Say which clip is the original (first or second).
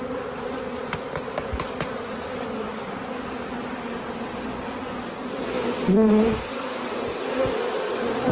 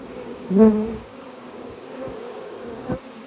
first